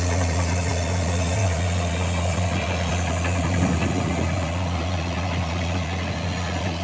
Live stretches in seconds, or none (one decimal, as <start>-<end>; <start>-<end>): none

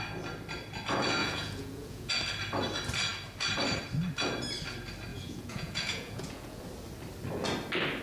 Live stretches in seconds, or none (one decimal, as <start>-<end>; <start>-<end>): 0.0-1.2; 2.1-5.1; 6.6-8.0

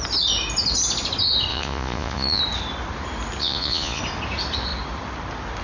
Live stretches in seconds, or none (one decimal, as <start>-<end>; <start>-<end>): 0.0-1.5; 2.4-3.4; 4.0-5.6

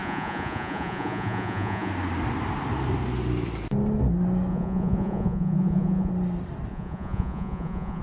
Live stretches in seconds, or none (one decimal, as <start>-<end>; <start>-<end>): 1.9-4.5; 6.1-6.7